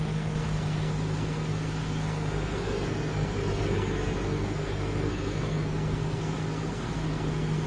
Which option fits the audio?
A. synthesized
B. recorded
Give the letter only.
A